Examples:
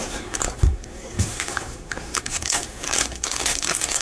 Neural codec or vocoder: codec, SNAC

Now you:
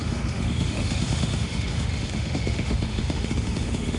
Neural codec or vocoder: autoencoder, DAC-VAE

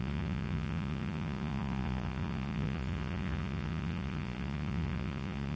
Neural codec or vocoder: vocoder, Vocos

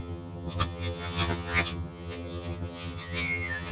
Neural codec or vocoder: vocoder, HiFi-GAN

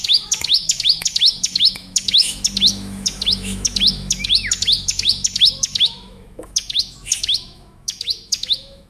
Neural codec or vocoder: autoencoder, DAC-VAE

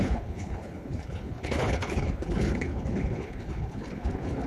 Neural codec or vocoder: codec, HILCodec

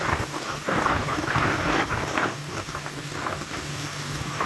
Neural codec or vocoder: codec, DAC